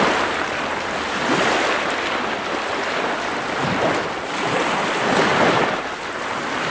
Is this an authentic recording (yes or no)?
yes